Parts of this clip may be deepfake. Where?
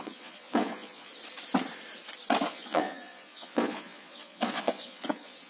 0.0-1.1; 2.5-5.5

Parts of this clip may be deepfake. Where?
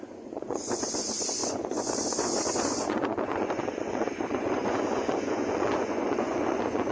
0.0-6.9